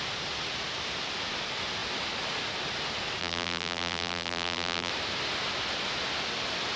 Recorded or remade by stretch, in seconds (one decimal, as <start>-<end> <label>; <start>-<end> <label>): 0.0-3.2 recorded; 3.2-4.9 remade; 4.9-6.8 recorded